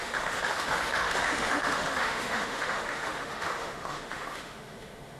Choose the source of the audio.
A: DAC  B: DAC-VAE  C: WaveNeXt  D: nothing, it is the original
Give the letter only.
B